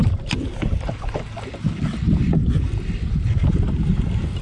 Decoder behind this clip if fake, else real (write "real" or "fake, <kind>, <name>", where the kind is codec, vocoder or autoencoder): real